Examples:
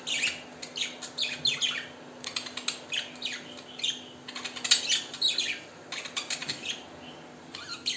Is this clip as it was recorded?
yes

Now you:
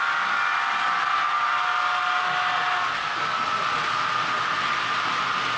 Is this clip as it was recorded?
yes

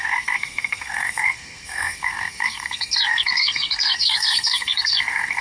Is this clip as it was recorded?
no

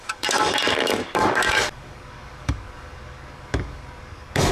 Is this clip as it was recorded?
no